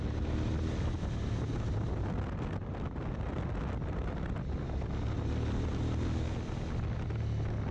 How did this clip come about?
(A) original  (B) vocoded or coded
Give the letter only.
A